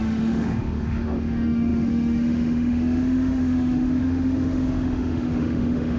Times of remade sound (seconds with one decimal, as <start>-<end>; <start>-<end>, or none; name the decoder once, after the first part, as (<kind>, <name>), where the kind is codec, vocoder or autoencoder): 0.0-6.0 (autoencoder, DAC-VAE)